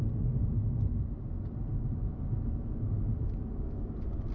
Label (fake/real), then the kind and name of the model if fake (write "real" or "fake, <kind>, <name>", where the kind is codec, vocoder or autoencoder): real